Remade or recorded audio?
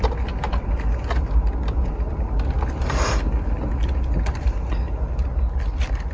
recorded